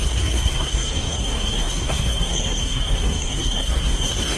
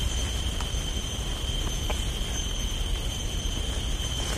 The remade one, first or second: first